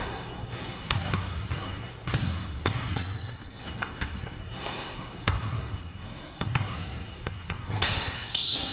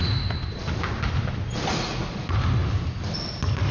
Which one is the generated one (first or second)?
first